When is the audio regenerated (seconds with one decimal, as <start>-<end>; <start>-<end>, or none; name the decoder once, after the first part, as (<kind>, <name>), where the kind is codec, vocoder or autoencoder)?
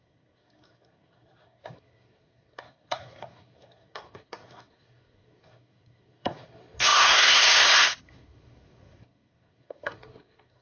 0.0-10.6 (codec, SNAC)